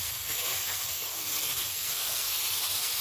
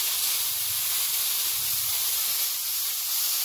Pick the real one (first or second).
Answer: second